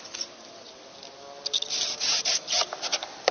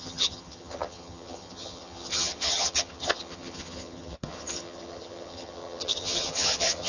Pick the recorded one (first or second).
first